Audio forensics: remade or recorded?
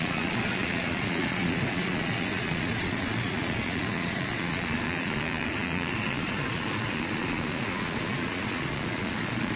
remade